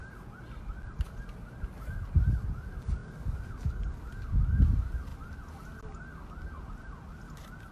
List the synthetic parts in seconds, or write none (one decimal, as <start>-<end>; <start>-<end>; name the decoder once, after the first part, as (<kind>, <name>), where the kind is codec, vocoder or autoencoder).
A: none